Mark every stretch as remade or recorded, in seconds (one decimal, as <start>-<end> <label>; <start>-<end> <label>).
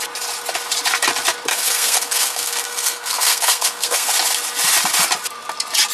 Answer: 0.0-1.5 recorded; 1.5-4.1 remade; 4.1-5.9 recorded